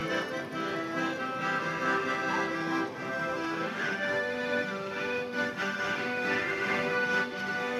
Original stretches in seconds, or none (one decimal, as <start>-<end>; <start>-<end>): 0.0-3.1